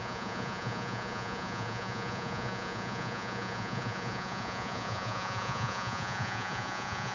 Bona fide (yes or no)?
no